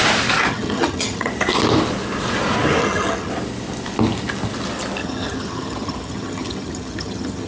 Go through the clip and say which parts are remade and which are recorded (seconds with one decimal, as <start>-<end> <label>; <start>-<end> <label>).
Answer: 0.0-0.5 recorded; 0.5-1.3 remade; 1.3-2.8 recorded; 2.8-3.3 remade; 3.3-5.0 recorded; 5.0-7.5 remade